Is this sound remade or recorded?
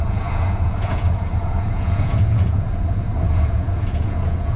remade